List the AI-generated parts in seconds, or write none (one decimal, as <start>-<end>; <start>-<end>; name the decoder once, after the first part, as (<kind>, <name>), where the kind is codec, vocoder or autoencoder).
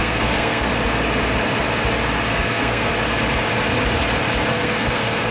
0.0-0.7 (codec, SNAC); 2.3-2.9; 4.5-5.3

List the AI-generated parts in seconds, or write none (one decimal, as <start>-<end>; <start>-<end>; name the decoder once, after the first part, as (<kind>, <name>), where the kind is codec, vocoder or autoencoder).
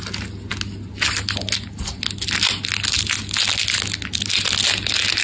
none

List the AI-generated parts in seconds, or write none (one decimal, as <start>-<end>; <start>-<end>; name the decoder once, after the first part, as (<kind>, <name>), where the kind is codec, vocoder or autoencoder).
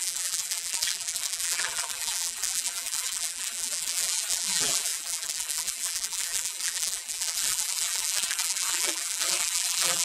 0.0-10.0 (vocoder, BigVGAN v2)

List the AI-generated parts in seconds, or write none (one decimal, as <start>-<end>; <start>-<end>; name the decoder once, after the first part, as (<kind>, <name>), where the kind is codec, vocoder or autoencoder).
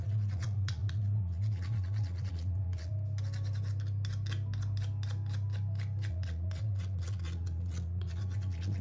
0.0-2.9 (vocoder, Vocos); 6.1-8.8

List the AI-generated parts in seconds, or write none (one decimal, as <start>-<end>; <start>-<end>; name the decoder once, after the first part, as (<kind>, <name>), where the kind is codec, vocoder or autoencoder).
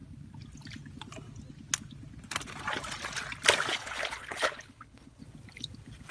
3.7-5.2 (codec, HILCodec)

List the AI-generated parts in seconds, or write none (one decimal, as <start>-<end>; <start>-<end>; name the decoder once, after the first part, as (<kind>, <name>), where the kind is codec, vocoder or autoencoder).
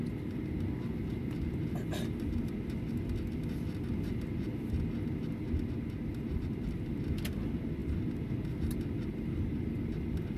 none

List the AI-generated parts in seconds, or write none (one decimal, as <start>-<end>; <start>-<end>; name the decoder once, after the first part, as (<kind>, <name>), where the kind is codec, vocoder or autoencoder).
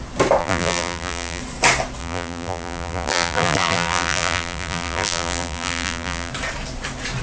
0.4-1.4 (vocoder, BigVGAN v2); 2.0-6.3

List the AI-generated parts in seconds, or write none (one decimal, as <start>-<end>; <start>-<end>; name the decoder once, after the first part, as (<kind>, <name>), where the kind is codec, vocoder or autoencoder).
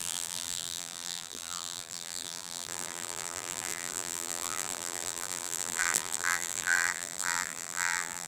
0.0-8.3 (vocoder, BigVGAN v2)